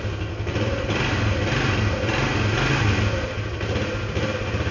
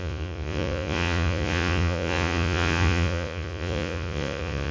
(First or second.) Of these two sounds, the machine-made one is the second